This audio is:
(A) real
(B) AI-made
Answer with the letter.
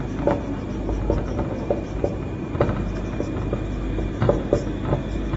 A